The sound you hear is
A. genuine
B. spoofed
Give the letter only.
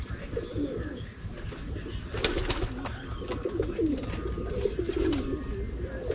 A